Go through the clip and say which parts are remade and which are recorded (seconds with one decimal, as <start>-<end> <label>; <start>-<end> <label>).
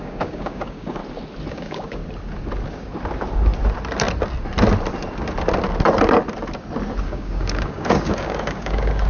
0.0-1.0 remade; 1.0-1.5 recorded; 1.5-2.0 remade; 2.0-7.0 recorded; 7.0-9.1 remade